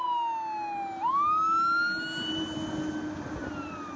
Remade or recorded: recorded